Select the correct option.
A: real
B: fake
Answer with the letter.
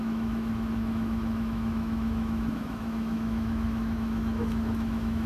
B